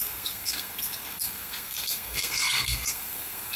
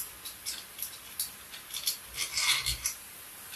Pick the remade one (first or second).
first